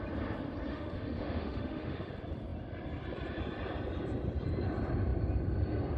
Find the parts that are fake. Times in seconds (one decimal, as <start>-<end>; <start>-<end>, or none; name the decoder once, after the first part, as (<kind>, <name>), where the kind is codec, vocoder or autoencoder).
0.7-2.1 (autoencoder, DAC-VAE)